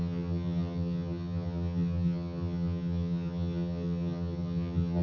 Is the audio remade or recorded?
remade